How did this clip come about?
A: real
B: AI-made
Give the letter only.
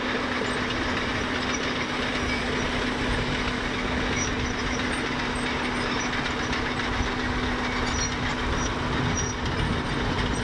A